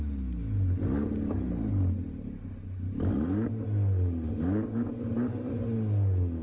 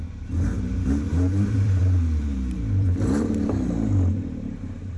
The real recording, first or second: first